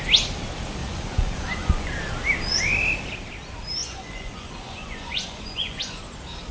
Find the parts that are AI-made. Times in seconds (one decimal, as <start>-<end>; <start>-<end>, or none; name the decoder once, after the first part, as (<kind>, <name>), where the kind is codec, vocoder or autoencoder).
0.8-1.9 (vocoder, Vocos); 3.8-6.0